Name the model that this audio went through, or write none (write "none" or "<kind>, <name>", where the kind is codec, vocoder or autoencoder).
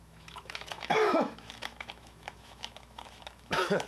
autoencoder, DAC-VAE